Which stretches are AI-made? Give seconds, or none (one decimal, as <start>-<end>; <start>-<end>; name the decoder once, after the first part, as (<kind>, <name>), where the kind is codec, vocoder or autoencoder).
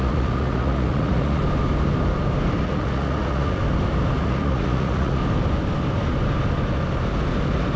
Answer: 0.0-1.4 (vocoder, Vocos); 2.6-3.6; 4.2-5.2